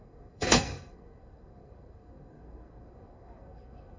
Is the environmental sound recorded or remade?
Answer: remade